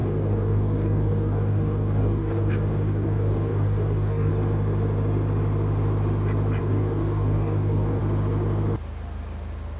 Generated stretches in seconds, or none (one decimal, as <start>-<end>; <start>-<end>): 0.0-4.3; 6.6-8.0